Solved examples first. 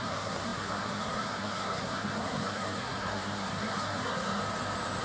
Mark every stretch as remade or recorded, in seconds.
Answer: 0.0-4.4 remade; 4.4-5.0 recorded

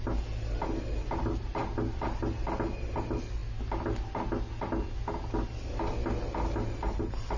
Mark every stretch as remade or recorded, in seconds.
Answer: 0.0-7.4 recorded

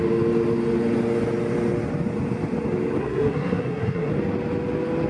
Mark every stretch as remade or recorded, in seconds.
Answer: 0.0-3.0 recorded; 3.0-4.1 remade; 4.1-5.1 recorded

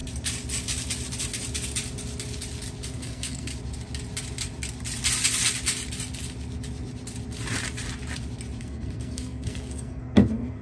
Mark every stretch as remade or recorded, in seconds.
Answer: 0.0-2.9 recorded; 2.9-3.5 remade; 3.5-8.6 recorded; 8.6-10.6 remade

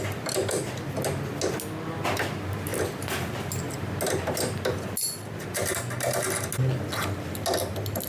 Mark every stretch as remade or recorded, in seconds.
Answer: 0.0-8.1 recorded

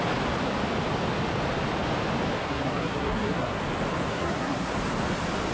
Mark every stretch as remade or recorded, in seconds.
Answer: 0.0-2.4 recorded; 2.4-3.6 remade; 3.6-4.1 recorded; 4.1-4.7 remade; 4.7-5.5 recorded